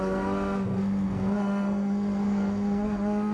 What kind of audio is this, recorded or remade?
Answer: remade